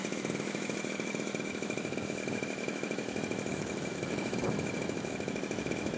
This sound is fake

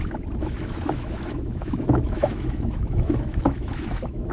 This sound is fake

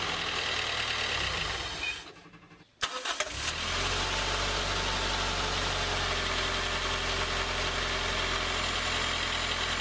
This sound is real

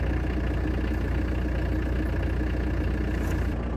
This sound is real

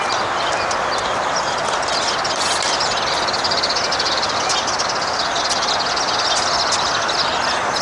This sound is real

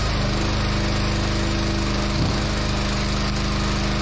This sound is real